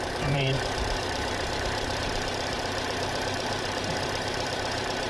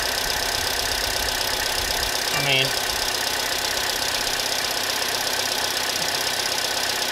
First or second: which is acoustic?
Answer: second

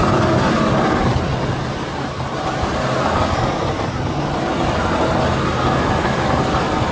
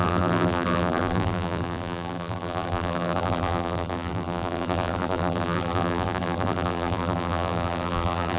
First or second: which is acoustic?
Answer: first